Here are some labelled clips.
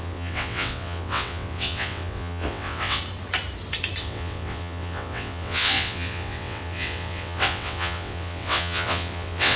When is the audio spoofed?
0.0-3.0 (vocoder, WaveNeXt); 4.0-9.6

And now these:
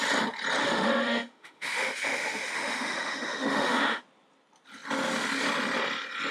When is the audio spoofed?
0.6-4.0 (autoencoder, DAC-VAE)

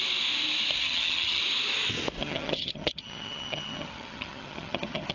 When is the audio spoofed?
0.8-1.4 (vocoder, HiFi-GAN); 2.2-5.1

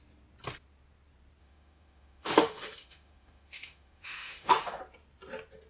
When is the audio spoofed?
1.4-4.8 (autoencoder, DAC-VAE)

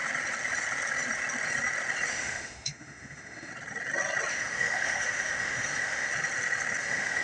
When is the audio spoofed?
2.1-3.5 (autoencoder, DAC-VAE); 4.3-6.1; 6.8-7.2

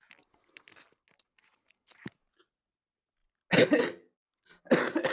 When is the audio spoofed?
none

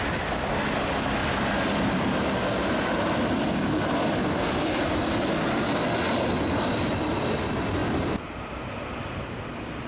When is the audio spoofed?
1.2-5.7 (vocoder, BigVGAN v2); 7.8-9.2